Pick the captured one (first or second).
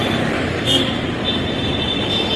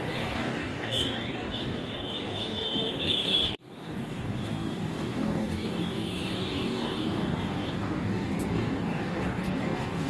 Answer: first